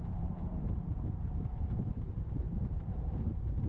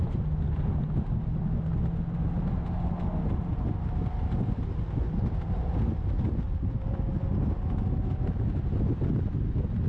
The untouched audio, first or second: second